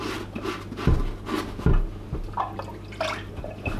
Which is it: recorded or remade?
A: recorded